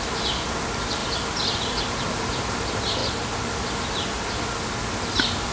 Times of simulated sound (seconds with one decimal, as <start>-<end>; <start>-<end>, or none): 1.0-2.3; 3.0-4.3